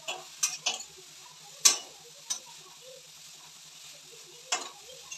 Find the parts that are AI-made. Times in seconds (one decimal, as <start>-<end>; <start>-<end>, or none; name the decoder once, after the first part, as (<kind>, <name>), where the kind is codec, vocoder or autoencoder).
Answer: none